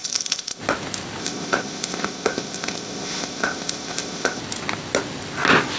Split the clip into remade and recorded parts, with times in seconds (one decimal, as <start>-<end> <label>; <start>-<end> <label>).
0.0-0.6 remade; 0.6-1.2 recorded; 1.2-4.4 remade; 4.4-5.8 recorded